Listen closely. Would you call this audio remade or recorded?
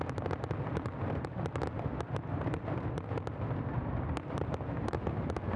recorded